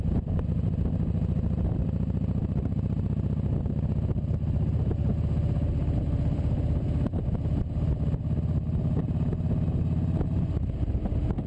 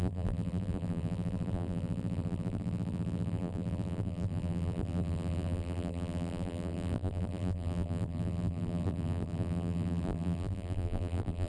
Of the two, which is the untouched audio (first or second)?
first